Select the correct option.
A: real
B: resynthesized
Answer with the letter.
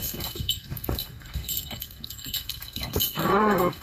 B